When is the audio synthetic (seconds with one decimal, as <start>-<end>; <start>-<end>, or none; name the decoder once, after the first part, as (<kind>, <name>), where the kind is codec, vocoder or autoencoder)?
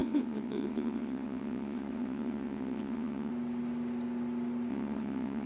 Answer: 0.0-3.3 (vocoder, WaveNeXt); 4.7-5.5